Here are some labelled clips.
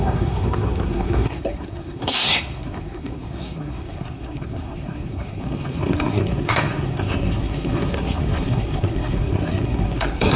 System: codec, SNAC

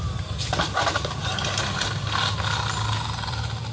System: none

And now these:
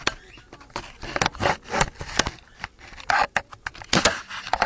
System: none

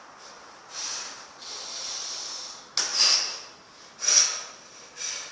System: none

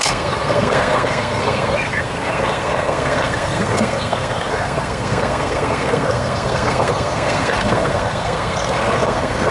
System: codec, SNAC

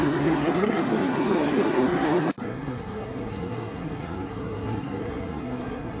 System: codec, SNAC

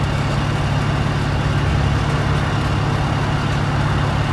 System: none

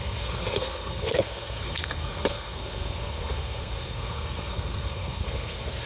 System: codec, SNAC